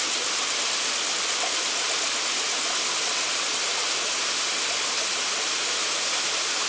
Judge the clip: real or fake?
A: real